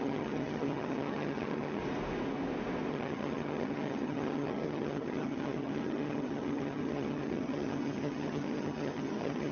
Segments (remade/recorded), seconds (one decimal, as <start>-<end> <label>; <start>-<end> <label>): 0.0-1.8 remade; 1.8-2.9 recorded; 2.9-9.5 remade